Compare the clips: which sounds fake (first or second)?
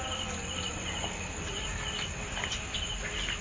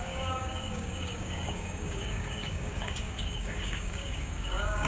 second